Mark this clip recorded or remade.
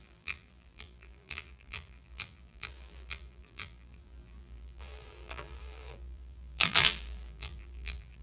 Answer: remade